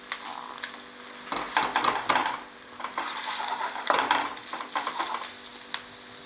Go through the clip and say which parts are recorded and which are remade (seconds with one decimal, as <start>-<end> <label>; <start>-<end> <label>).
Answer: 0.0-2.2 recorded; 2.2-5.0 remade; 5.0-6.3 recorded

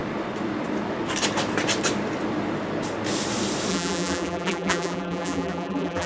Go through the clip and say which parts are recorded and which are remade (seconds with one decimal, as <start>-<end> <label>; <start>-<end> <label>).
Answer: 0.0-3.7 recorded; 3.7-6.1 remade

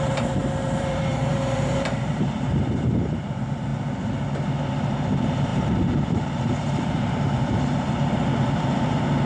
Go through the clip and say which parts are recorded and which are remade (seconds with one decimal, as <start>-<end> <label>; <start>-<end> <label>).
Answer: 0.0-3.7 remade; 3.7-4.4 recorded; 4.4-9.3 remade

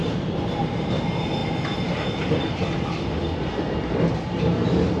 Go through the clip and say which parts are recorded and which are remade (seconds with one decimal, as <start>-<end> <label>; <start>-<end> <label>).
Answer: 0.0-0.9 remade; 0.9-5.0 recorded

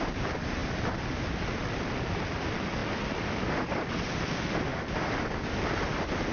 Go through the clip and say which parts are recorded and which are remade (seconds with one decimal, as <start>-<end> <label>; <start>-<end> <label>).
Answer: 0.0-6.3 remade